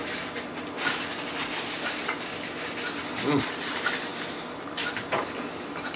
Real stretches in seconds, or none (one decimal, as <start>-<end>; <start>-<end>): 0.0-6.0

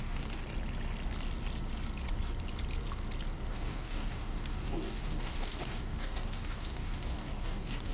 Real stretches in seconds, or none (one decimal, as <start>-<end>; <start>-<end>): 0.4-3.5

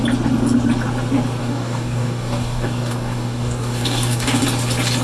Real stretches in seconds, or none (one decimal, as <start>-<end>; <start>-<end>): 0.0-1.4; 4.4-5.0

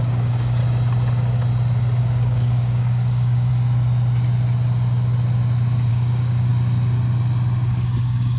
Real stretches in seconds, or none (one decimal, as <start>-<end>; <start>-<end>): 0.6-2.0; 3.5-5.9; 6.5-7.7